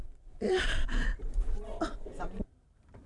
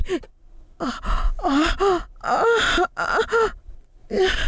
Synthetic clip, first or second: first